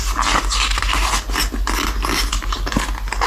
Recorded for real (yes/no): yes